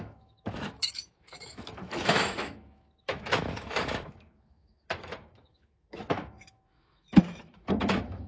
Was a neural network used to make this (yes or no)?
yes